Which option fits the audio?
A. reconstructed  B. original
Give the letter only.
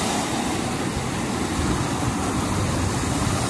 B